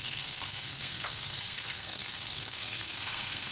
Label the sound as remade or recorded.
remade